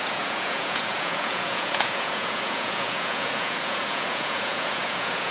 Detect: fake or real fake